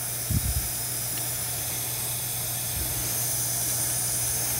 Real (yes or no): yes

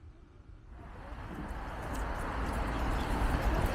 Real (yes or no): yes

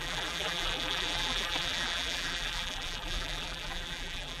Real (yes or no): no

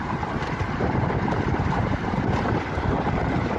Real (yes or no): no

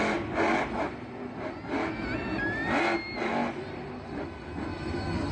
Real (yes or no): yes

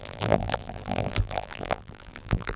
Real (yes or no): no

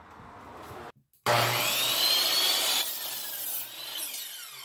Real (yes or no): yes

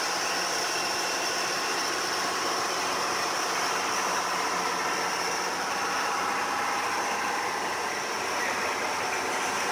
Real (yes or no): yes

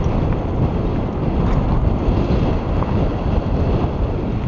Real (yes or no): yes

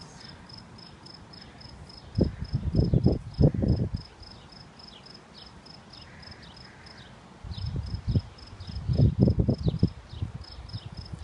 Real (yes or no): yes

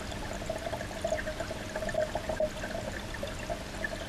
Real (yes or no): yes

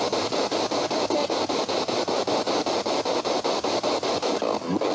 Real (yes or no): no